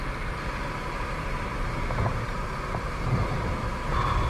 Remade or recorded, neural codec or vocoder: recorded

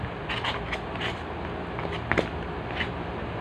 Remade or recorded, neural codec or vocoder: recorded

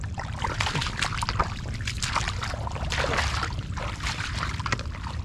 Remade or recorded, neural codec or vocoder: recorded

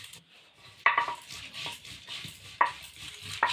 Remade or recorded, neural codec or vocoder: remade, vocoder, BigVGAN v2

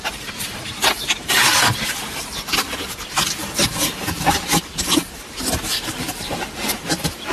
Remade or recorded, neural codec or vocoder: remade, vocoder, BigVGAN v2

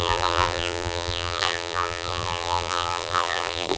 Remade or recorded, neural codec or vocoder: remade, vocoder, BigVGAN v2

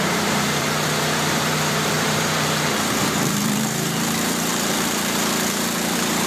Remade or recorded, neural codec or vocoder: remade, vocoder, BigVGAN v2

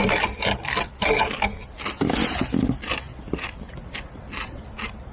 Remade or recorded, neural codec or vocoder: recorded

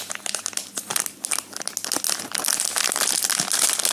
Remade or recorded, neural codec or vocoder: recorded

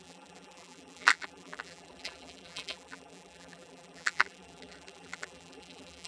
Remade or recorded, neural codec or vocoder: remade, vocoder, BigVGAN v2